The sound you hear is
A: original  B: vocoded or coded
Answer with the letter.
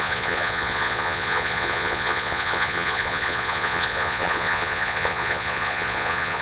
B